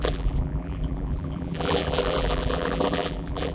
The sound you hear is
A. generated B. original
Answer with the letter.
A